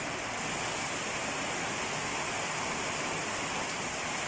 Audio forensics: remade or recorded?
recorded